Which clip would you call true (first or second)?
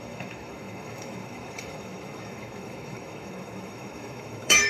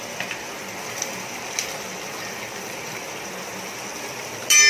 second